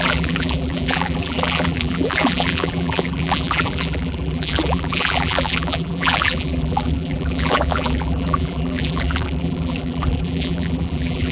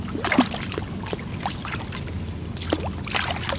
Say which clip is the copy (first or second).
first